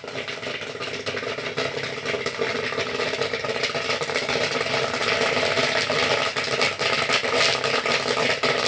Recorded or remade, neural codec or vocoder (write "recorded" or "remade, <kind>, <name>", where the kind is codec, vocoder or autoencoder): recorded